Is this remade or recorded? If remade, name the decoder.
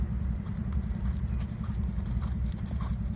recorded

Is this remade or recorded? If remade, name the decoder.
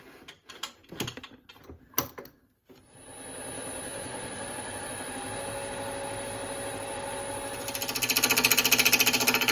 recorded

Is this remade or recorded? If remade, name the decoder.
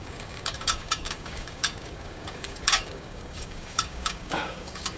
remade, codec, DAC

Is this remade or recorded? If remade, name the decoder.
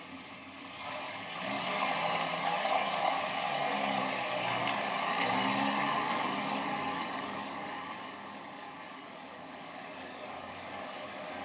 remade, codec, DAC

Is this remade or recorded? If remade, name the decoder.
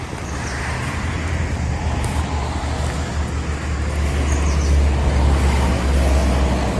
recorded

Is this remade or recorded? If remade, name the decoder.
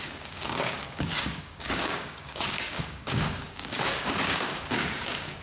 remade, codec, DAC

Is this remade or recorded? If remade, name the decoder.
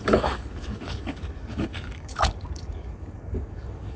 remade, codec, DAC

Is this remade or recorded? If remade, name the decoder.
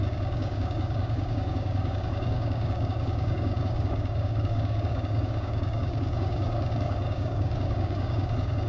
remade, codec, DAC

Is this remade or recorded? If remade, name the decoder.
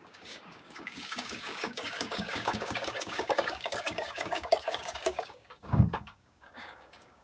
remade, codec, DAC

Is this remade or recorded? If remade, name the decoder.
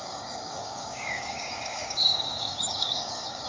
remade, codec, DAC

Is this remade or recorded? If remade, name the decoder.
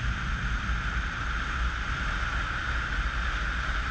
recorded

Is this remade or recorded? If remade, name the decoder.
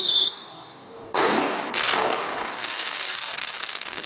remade, codec, DAC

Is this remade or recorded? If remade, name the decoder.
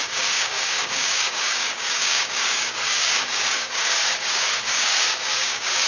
remade, codec, DAC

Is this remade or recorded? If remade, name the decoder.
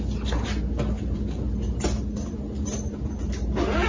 recorded